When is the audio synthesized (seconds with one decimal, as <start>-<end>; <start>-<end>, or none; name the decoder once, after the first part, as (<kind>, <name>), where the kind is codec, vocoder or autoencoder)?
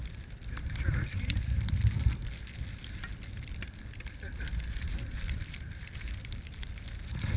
0.5-2.2 (vocoder, BigVGAN v2); 4.1-7.4